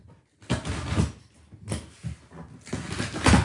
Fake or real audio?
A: real